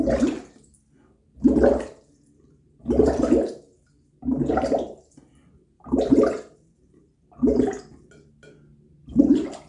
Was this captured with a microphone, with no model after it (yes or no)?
yes